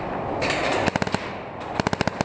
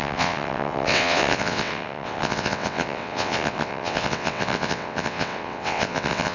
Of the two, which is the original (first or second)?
first